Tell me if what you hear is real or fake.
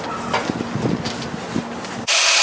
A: real